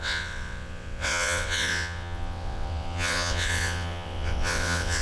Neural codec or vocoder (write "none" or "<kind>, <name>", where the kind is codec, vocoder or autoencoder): vocoder, WaveNeXt